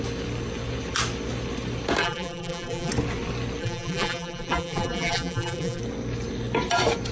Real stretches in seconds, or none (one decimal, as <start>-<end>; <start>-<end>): 0.0-2.0; 2.9-3.6; 5.8-7.1